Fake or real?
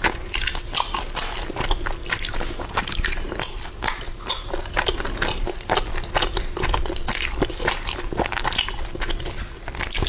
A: real